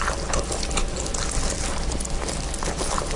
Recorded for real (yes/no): yes